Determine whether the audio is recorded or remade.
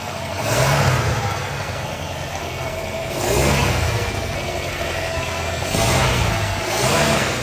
remade